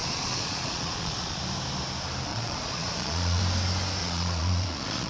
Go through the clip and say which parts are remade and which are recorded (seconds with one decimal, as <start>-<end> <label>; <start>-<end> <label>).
0.0-1.4 remade; 1.4-2.3 recorded; 2.3-3.4 remade; 3.4-4.0 recorded; 4.0-5.1 remade